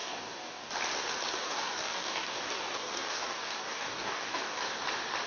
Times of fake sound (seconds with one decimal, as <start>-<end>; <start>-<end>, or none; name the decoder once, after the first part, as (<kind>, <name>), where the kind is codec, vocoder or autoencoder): 0.0-0.7 (codec, DAC); 1.4-4.6